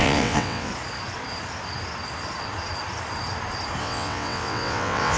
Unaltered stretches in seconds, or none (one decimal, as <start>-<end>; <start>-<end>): 0.7-3.8